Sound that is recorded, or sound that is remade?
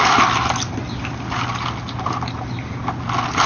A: recorded